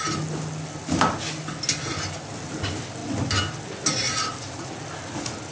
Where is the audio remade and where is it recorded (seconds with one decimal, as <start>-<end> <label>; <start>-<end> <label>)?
0.0-5.5 recorded